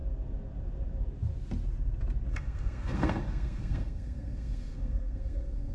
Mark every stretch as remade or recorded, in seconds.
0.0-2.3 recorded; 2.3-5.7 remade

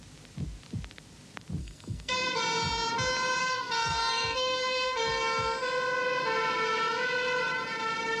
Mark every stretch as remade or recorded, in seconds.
0.0-1.6 recorded; 1.6-2.4 remade; 2.4-3.4 recorded; 3.4-5.1 remade; 5.1-8.2 recorded

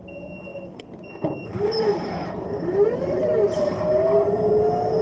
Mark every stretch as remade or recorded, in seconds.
0.0-1.5 recorded; 1.5-4.5 remade; 4.5-5.0 recorded

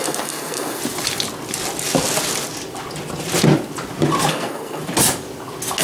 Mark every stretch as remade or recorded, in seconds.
0.0-0.8 remade; 0.8-4.3 recorded; 4.3-4.8 remade; 4.8-5.8 recorded

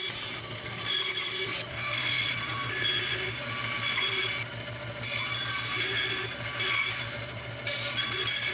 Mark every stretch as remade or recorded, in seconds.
0.0-1.7 recorded; 1.7-2.2 remade; 2.2-8.5 recorded

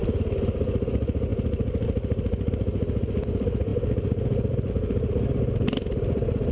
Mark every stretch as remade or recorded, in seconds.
0.0-6.5 recorded

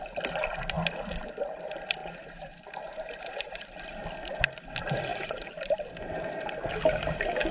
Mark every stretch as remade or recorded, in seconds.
0.0-2.0 recorded; 2.0-3.8 remade; 3.8-5.1 recorded; 5.1-5.9 remade; 5.9-7.5 recorded